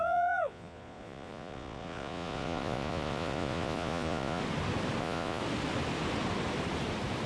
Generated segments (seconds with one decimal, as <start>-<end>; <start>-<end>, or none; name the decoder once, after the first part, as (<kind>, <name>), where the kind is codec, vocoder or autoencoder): 0.0-4.4 (vocoder, Vocos); 5.0-5.4